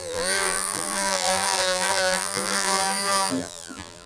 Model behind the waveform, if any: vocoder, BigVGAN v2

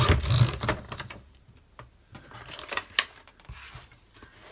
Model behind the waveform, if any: vocoder, BigVGAN v2